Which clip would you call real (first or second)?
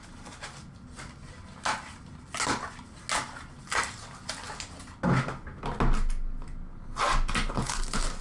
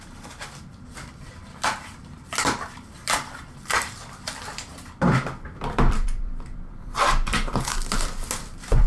first